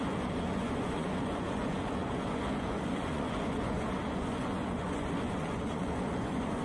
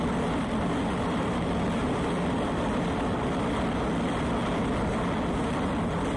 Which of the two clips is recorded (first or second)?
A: second